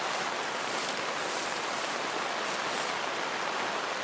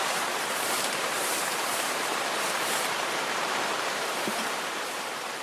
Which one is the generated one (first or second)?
second